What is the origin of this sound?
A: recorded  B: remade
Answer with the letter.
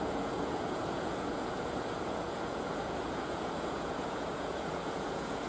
B